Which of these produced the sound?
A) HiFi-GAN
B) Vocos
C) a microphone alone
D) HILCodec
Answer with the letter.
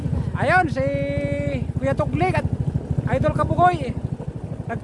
C